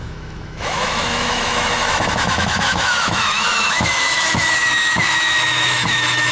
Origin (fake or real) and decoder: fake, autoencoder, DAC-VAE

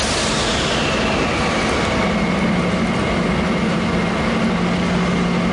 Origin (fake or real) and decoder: real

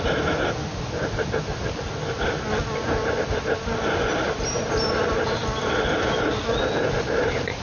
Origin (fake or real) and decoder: real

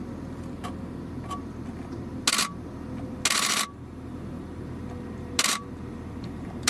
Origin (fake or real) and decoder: real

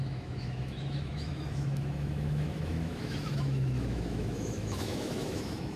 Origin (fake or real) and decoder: fake, autoencoder, DAC-VAE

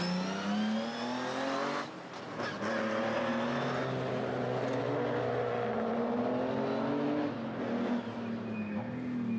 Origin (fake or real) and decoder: real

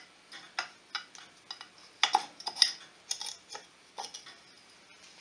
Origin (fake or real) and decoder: real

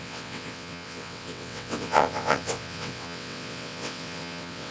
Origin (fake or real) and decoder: fake, vocoder, WaveNeXt